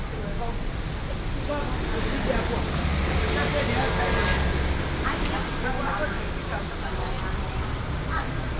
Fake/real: real